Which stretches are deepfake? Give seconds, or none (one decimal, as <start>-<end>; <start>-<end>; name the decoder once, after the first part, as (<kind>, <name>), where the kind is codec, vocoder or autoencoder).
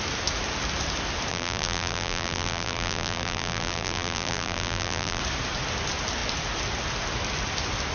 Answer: 1.3-5.2 (vocoder, BigVGAN v2)